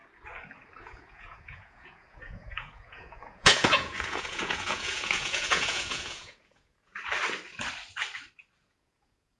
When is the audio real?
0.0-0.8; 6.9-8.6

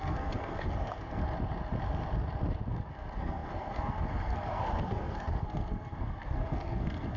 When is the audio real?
1.2-2.7

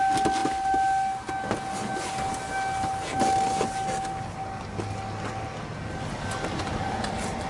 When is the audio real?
0.0-7.5

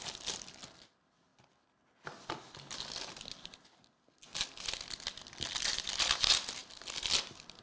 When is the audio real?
0.0-7.6

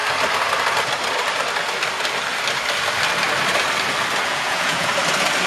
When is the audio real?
0.0-4.3; 4.9-5.5